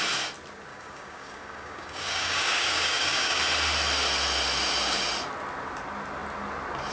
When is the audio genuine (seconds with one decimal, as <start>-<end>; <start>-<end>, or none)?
0.0-0.7; 3.4-6.9

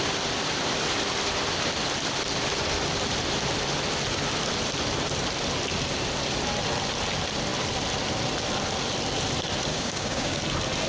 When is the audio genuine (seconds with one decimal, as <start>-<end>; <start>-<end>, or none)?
0.0-9.7; 10.4-10.9

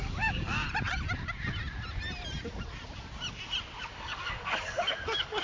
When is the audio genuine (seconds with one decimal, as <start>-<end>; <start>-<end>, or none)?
0.6-3.8

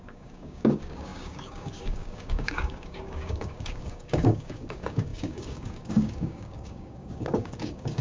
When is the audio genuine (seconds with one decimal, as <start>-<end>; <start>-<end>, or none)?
none

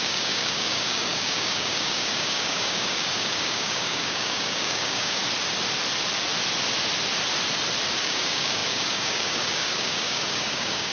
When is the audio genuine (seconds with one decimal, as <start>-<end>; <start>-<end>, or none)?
5.2-8.0